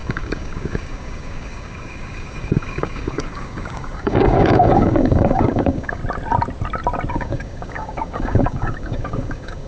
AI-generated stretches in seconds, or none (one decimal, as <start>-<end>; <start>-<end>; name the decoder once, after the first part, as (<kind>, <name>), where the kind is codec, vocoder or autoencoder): 0.0-6.0 (codec, DAC); 7.1-9.7